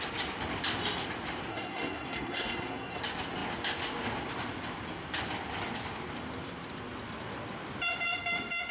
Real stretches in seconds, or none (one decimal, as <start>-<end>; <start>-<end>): 0.0-1.5; 3.0-8.7